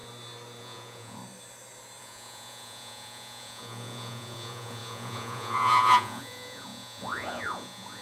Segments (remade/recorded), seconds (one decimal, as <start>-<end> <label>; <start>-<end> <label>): 0.0-0.6 recorded; 0.6-1.2 remade; 1.2-2.0 recorded; 2.0-8.0 remade